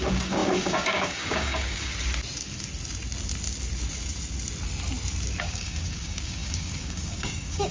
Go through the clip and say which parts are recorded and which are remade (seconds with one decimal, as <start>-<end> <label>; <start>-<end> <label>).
0.0-1.9 remade; 1.9-5.4 recorded; 5.4-7.7 remade

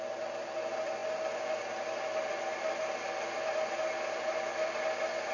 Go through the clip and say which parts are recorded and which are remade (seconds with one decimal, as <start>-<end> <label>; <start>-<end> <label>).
0.0-5.3 recorded

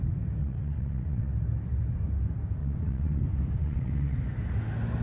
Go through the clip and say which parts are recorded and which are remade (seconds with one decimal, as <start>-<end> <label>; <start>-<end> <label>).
0.0-0.4 recorded; 0.4-1.3 remade; 1.3-2.6 recorded; 2.6-3.2 remade; 3.2-3.6 recorded; 3.6-4.2 remade; 4.2-5.0 recorded

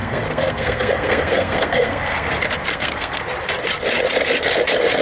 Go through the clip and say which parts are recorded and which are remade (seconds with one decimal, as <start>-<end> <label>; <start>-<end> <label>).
0.0-2.3 remade; 2.3-2.7 recorded; 2.7-3.2 remade; 3.2-5.0 recorded

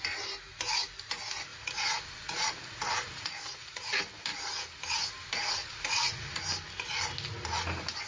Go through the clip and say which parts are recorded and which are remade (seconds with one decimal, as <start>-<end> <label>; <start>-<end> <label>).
0.0-1.5 recorded; 1.5-3.9 remade; 3.9-4.3 recorded; 4.3-4.8 remade; 4.8-5.6 recorded; 5.6-6.4 remade; 6.4-8.1 recorded

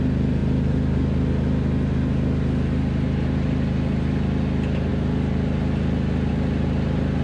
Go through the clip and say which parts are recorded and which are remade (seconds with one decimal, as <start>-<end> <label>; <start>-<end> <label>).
0.0-7.2 recorded